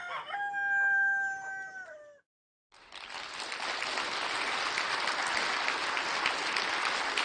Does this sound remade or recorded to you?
recorded